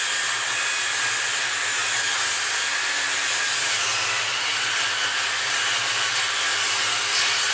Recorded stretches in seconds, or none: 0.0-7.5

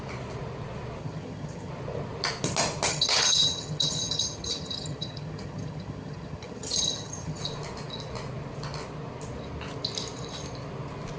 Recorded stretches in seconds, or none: 0.0-1.0; 1.7-2.9; 7.4-11.2